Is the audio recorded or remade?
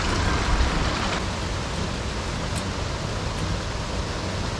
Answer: recorded